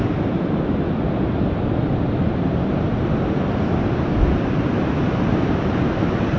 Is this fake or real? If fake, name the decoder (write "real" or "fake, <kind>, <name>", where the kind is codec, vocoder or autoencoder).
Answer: real